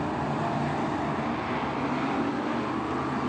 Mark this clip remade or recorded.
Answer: recorded